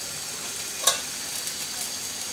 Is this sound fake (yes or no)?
no